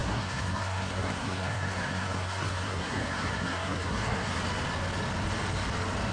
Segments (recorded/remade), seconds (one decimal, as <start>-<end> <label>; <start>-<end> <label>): 0.0-4.4 remade; 4.4-6.1 recorded